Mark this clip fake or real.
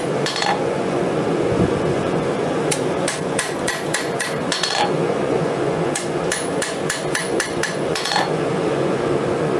fake